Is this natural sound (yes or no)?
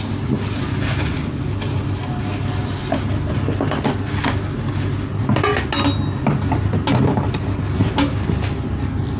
yes